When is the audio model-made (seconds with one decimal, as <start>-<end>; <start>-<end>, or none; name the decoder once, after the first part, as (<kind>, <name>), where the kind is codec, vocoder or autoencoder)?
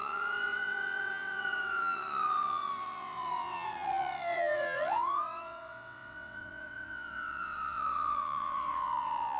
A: 0.0-9.4 (vocoder, WaveNeXt)